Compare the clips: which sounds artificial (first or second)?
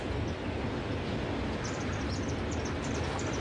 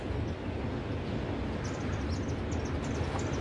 first